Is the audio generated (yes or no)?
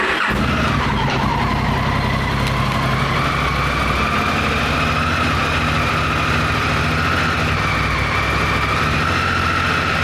no